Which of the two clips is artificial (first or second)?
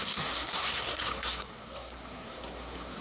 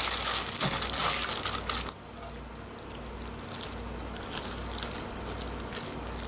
first